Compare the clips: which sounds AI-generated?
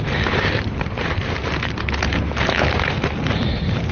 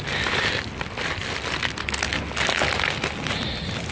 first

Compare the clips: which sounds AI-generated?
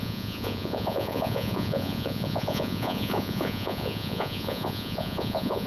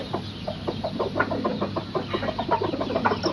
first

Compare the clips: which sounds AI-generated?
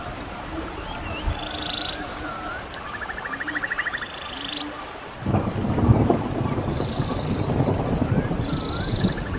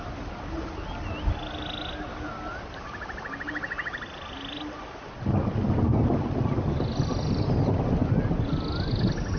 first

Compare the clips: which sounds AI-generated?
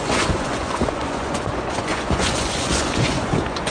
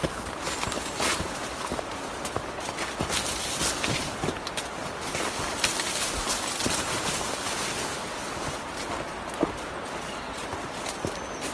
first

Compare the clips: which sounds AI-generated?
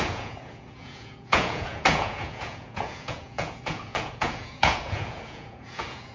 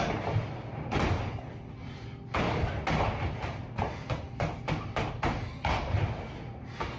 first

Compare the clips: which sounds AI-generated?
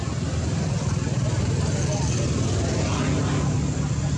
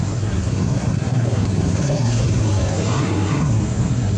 second